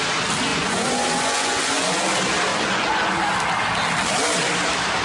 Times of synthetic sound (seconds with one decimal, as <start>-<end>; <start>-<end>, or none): 0.5-2.0; 2.5-3.2